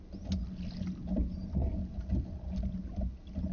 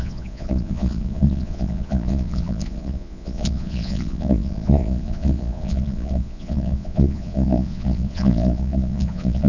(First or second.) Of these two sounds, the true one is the first